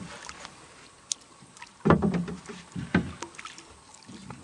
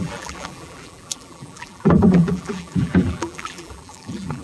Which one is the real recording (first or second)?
first